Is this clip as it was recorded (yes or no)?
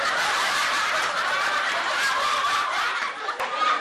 no